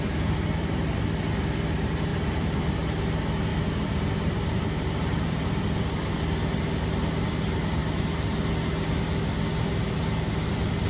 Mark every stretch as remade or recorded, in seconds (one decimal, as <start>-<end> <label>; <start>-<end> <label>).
0.0-2.1 recorded; 2.1-2.7 remade; 2.7-3.5 recorded; 3.5-5.9 remade; 5.9-10.9 recorded